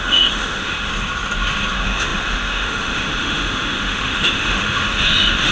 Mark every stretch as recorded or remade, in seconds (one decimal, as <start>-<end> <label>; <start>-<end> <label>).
0.0-0.9 remade; 0.9-1.7 recorded; 1.7-5.5 remade